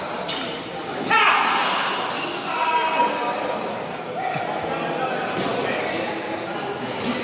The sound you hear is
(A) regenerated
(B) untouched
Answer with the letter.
B